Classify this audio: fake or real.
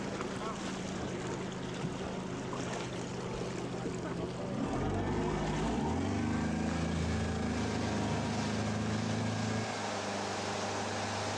real